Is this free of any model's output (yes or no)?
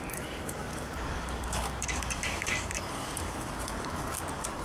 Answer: no